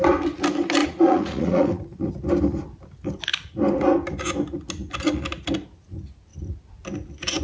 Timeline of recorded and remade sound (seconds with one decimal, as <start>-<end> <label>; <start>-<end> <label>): 0.0-0.8 recorded; 0.8-2.1 remade; 2.1-7.4 recorded